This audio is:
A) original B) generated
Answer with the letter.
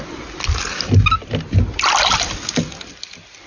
A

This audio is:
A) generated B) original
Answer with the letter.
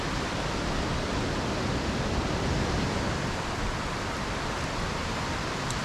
B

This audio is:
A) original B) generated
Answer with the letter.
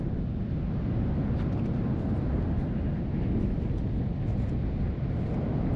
A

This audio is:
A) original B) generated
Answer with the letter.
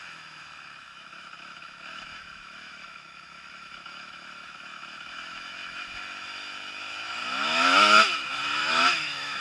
B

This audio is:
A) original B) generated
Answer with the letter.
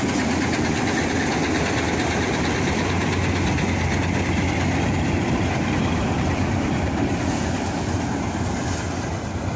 A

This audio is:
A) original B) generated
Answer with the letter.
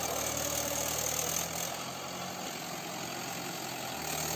A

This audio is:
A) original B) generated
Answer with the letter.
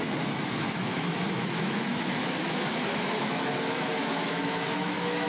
B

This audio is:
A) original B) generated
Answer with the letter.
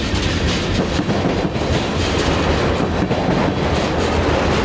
A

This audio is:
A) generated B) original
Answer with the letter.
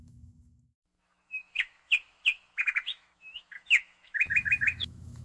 A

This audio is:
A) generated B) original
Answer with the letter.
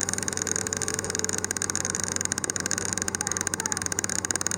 A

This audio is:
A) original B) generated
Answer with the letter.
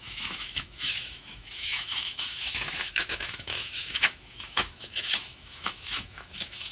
B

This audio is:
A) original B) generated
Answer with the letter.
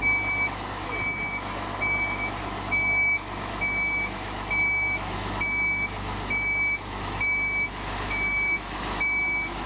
B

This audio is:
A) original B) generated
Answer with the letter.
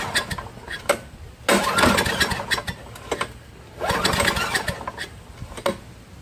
A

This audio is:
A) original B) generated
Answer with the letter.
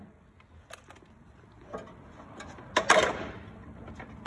A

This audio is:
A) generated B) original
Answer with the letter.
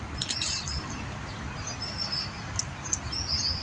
B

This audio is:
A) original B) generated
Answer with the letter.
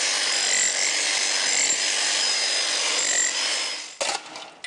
A